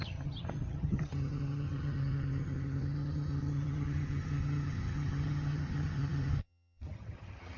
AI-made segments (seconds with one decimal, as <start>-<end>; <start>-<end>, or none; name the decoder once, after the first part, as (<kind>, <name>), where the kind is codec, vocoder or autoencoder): 0.0-7.6 (vocoder, HiFi-GAN)